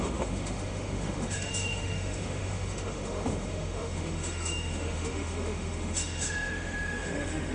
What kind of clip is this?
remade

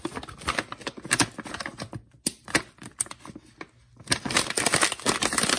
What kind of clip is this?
recorded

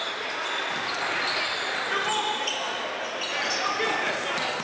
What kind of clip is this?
recorded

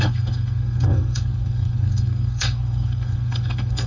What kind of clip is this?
remade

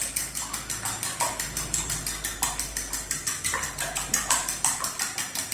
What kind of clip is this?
recorded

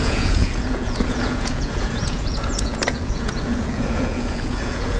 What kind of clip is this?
remade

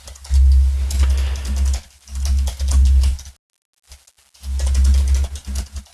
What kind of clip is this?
recorded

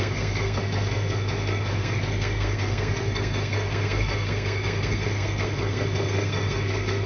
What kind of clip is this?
remade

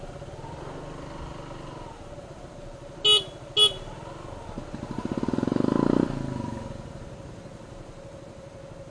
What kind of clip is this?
recorded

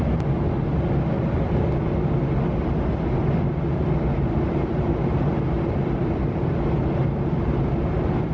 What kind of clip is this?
recorded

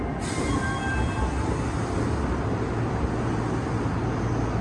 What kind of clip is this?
recorded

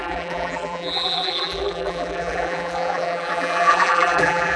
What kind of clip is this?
remade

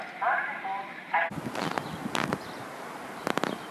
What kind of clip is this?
recorded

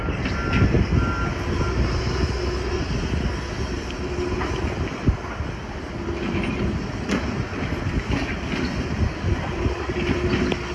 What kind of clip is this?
recorded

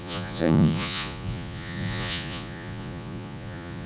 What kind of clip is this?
remade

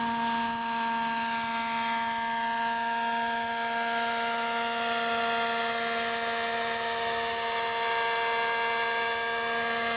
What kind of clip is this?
recorded